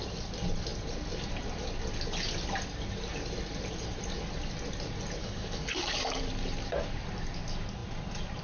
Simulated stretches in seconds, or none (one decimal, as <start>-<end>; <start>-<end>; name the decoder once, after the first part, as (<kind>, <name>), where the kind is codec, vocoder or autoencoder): 5.2-6.2 (codec, DAC)